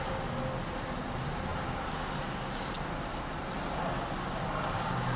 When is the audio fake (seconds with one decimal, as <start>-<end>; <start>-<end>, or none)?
none